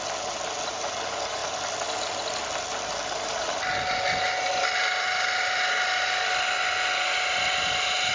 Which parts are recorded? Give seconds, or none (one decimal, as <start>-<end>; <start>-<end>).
0.0-8.1